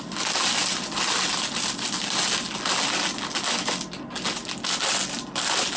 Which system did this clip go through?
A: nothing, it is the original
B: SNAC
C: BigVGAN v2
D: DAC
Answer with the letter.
A